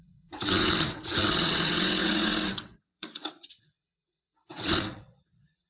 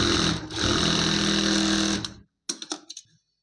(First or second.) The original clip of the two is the second